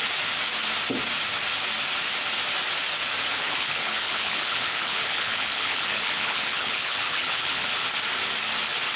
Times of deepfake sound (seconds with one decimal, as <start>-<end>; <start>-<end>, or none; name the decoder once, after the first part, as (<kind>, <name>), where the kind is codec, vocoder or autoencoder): 3.3-7.7 (codec, HILCodec)

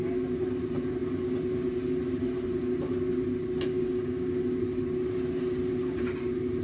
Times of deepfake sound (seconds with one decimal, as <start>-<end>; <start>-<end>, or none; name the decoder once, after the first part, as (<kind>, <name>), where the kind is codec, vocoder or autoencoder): 3.7-4.3 (codec, DAC)

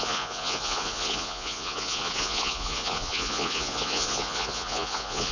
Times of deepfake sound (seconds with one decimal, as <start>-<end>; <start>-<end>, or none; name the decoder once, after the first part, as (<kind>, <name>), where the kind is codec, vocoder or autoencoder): 0.0-5.3 (vocoder, Vocos)

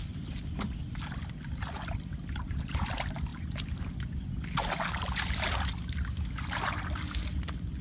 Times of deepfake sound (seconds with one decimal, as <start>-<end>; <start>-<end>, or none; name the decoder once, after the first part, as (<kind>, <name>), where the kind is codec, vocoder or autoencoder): none

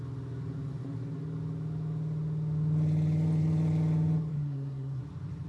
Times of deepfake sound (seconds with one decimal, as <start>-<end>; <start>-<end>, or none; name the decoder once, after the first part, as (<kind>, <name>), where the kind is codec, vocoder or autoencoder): 4.3-5.0 (codec, SNAC)

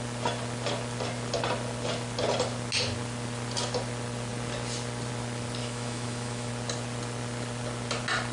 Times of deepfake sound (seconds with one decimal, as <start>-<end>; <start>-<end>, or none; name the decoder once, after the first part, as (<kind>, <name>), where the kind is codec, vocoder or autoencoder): 5.6-6.5 (autoencoder, DAC-VAE)

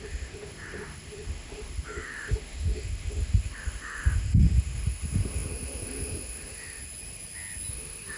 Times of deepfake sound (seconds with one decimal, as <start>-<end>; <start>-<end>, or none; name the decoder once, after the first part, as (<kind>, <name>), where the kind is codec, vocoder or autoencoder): 0.0-6.8 (autoencoder, DAC-VAE); 7.7-8.2